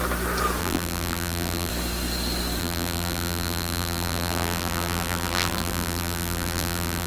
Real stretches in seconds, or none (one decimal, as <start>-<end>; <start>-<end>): 0.0-0.6; 1.7-2.6